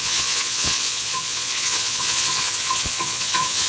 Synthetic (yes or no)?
yes